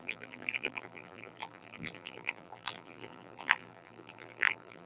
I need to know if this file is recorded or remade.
remade